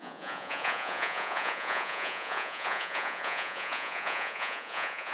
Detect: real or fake fake